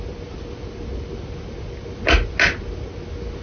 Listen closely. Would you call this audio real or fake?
real